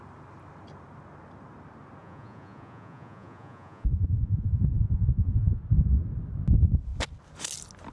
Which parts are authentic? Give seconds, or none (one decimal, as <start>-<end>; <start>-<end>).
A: 0.0-2.0; 5.6-7.9